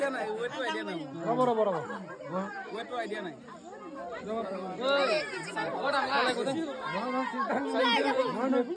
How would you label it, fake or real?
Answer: real